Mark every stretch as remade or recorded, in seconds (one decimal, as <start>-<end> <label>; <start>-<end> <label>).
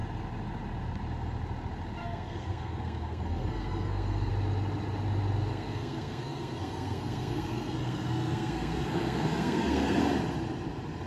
0.0-2.0 recorded; 2.0-4.3 remade; 4.3-5.5 recorded; 5.5-10.0 remade; 10.0-11.1 recorded